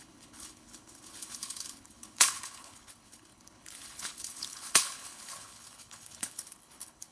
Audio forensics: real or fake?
fake